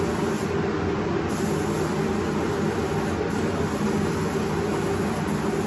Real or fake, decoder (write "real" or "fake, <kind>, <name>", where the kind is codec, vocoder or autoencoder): real